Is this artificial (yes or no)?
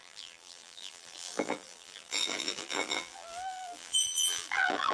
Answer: yes